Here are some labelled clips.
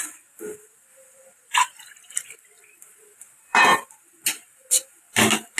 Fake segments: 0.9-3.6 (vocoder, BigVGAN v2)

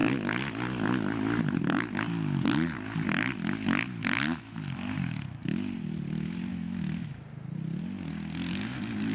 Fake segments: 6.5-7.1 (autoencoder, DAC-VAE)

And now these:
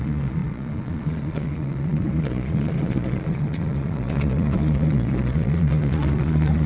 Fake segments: 0.0-6.7 (vocoder, Vocos)

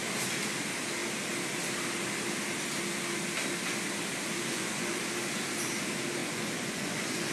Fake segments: 4.5-5.0 (vocoder, Vocos); 6.2-7.3